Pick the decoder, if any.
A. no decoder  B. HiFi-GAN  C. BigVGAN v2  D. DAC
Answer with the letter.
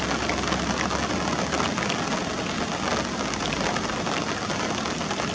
A